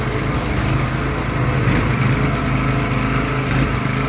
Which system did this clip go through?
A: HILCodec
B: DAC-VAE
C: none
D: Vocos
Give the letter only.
C